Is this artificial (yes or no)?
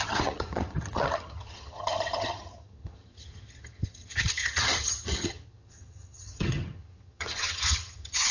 yes